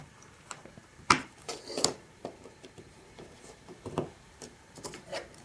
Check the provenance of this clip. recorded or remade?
remade